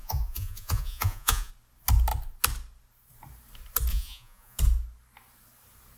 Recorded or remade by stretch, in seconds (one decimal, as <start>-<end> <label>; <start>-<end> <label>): 0.0-1.5 remade; 1.5-3.9 recorded; 3.9-4.6 remade; 4.6-6.0 recorded